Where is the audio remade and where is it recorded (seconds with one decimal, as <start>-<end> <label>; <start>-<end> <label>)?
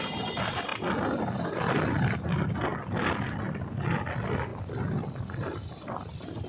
0.0-6.5 recorded